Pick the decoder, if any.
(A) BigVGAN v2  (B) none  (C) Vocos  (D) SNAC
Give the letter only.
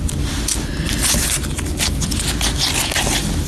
B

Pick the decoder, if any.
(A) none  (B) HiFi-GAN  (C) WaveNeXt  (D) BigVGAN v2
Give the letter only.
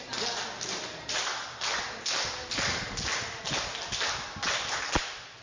A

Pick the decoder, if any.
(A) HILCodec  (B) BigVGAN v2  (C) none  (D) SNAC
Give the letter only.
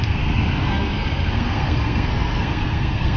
D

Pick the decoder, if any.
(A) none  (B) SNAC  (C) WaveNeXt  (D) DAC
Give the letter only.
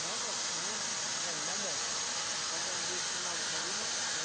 A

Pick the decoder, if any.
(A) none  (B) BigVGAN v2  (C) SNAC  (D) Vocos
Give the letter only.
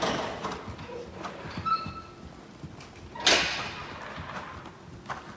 A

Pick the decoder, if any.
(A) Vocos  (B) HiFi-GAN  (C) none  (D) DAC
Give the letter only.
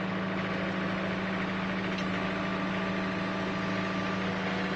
C